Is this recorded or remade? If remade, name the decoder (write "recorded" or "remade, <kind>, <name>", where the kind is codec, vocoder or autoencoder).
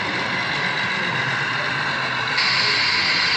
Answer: recorded